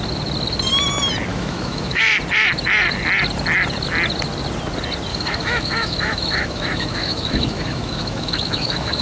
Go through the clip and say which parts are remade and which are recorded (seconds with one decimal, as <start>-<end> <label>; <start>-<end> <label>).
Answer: 0.0-1.3 recorded; 1.3-2.0 remade; 2.0-5.1 recorded; 5.1-9.0 remade